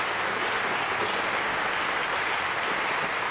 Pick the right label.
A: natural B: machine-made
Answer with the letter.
A